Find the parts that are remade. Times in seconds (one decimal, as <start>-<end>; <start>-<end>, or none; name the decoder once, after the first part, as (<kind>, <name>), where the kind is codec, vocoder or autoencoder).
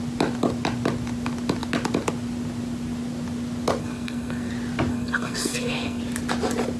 3.8-4.5 (codec, SNAC); 4.9-6.0